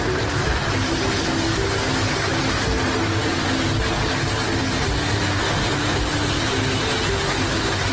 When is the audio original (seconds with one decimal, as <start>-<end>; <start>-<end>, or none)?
0.0-7.9